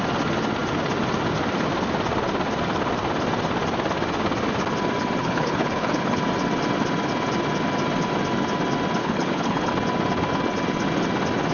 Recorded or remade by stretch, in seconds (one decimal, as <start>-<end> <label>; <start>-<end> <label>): 0.0-5.2 recorded; 5.2-6.2 remade; 6.2-9.0 recorded; 9.0-9.7 remade; 9.7-11.5 recorded